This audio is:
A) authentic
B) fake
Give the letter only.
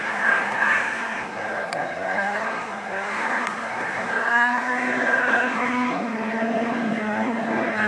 B